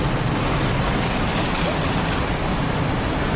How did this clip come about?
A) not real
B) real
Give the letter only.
B